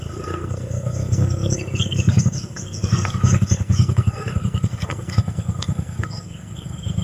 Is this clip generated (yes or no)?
yes